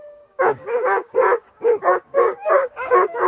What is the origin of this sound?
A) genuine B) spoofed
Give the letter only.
B